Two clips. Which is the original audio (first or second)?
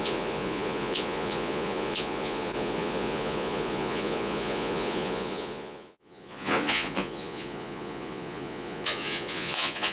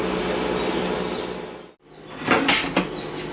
second